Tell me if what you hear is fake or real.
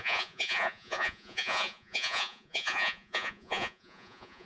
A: fake